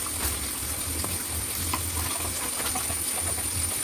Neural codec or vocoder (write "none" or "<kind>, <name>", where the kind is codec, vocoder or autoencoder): none